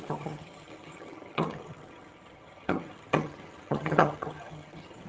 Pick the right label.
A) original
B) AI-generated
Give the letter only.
B